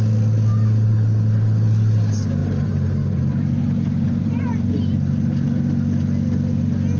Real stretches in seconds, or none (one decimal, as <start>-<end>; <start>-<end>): 0.0-2.4; 4.7-7.0